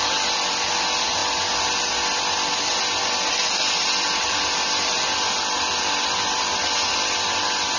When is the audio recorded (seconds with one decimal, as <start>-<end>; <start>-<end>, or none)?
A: 0.0-7.8